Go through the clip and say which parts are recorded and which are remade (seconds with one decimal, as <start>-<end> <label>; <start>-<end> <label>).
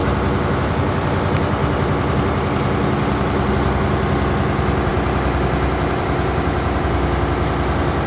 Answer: 0.0-0.6 remade; 0.6-1.6 recorded; 1.6-3.5 remade; 3.5-4.9 recorded; 4.9-6.8 remade; 6.8-8.1 recorded